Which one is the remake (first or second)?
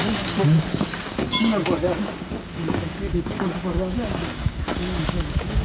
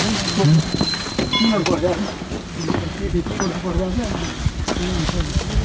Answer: first